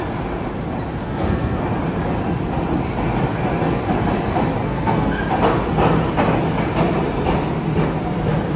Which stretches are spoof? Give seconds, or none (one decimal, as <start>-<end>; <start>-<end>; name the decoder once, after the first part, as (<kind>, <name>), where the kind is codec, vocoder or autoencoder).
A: 1.0-1.6 (codec, SNAC); 4.6-5.2